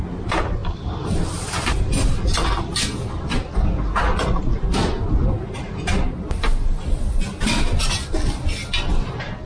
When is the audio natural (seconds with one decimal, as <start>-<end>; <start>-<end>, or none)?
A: 0.0-0.6; 1.5-9.5